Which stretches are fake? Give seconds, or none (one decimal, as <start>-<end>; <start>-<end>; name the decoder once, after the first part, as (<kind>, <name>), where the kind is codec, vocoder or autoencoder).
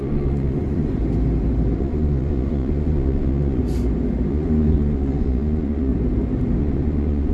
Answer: 0.0-1.0 (vocoder, Vocos); 1.8-3.6; 4.3-5.9; 6.6-7.3